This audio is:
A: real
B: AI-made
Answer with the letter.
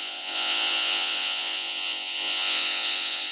B